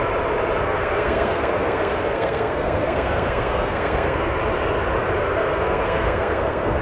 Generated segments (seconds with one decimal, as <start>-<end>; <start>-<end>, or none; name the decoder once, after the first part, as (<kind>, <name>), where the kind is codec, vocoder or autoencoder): 0.6-4.4 (codec, SNAC); 5.2-6.8